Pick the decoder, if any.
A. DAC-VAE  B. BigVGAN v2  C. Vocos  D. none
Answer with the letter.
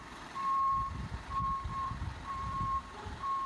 B